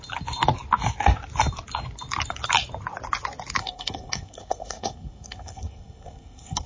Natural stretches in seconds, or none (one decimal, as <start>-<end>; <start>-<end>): 0.0-3.6